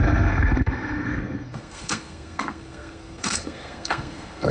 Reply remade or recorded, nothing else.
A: remade